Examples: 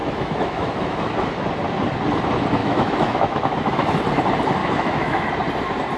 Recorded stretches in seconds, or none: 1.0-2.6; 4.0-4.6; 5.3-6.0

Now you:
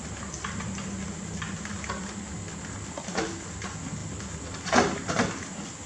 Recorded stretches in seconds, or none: 0.0-5.9

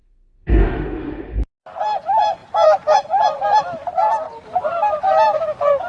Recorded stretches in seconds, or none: 1.4-5.9

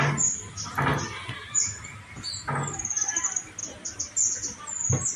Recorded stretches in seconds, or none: 0.0-5.2

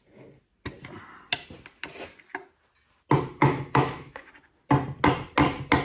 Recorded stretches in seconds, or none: 0.0-3.4; 4.3-5.8